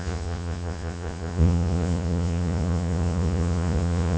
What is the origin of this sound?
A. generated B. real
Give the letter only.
A